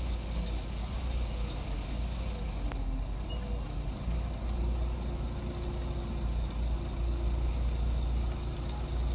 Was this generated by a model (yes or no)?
no